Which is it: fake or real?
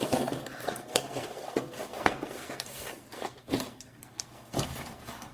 fake